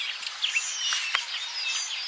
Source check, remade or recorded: recorded